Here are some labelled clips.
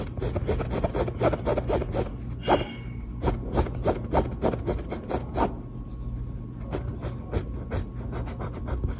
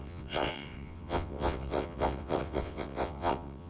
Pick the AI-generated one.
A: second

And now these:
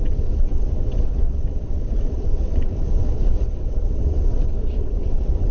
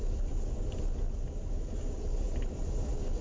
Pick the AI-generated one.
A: first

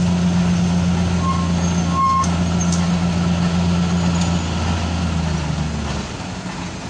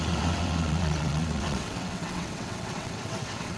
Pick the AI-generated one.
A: second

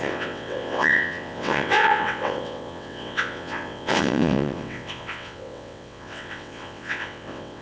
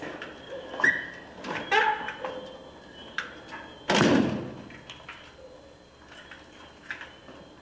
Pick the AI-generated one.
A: first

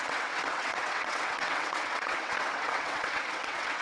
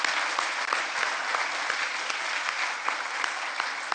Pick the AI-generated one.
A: first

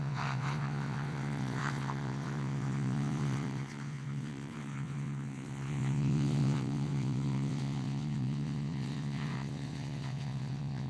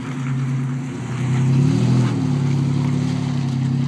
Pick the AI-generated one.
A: first